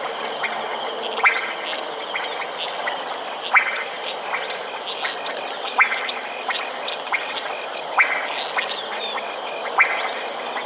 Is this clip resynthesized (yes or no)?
no